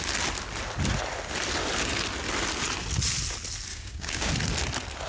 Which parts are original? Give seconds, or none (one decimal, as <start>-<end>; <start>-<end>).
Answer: 0.0-3.7; 4.3-5.1